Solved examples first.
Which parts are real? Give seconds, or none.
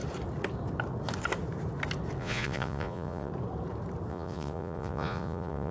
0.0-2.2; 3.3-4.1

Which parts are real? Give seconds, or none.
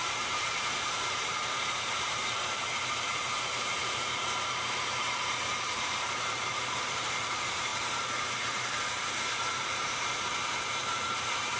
10.3-10.9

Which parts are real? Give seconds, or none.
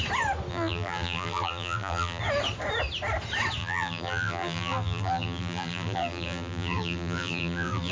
0.0-0.5; 2.2-3.6